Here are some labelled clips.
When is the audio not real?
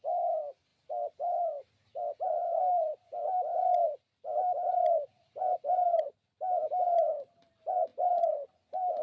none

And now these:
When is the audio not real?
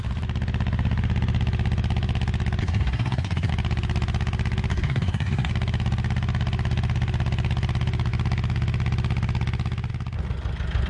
2.6-3.5 (codec, SNAC); 4.7-5.5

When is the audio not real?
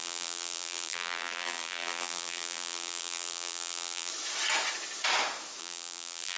0.0-4.1 (vocoder, BigVGAN v2); 5.6-6.4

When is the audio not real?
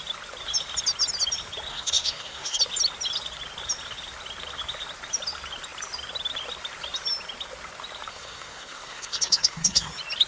1.7-2.6 (codec, SNAC); 8.1-9.9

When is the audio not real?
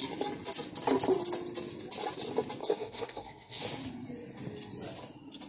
2.6-3.6 (codec, SNAC)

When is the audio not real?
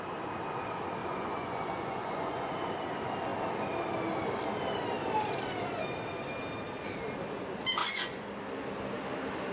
1.0-2.5 (vocoder, Vocos); 7.8-8.3